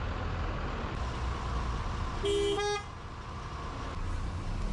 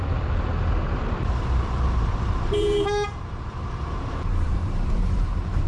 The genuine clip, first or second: first